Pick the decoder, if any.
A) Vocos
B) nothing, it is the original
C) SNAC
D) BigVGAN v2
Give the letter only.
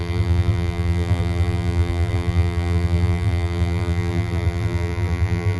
D